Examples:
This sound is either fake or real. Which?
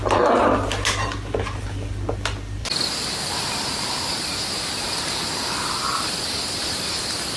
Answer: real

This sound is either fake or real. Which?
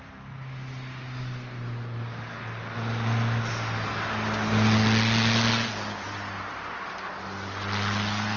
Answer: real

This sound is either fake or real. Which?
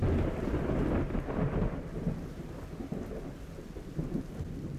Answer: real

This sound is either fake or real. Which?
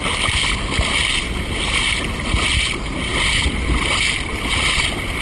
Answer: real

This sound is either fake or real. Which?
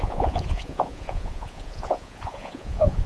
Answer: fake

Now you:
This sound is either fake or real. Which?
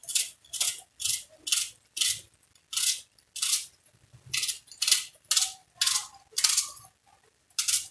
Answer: real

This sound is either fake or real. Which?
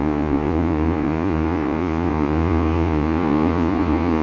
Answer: fake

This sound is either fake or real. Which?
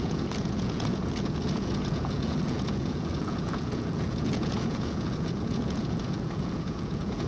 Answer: fake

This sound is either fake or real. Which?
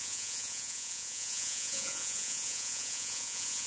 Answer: fake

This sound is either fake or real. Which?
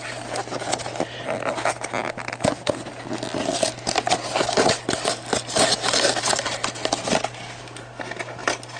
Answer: real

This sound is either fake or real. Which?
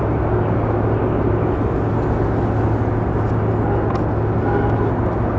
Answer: real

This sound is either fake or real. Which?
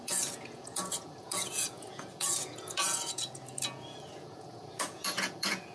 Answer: fake